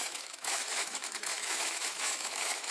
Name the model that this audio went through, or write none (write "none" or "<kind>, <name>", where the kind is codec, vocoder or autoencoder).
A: autoencoder, DAC-VAE